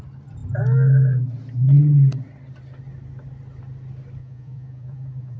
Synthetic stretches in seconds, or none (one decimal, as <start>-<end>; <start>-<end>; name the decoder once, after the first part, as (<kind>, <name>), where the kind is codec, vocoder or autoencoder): 4.2-5.4 (vocoder, Vocos)